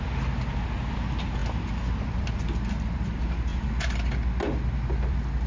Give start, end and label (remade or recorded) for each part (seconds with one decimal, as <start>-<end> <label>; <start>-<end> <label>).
0.0-5.5 recorded